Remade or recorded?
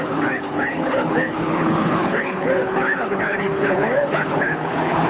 remade